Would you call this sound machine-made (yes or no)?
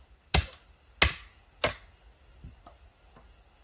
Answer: no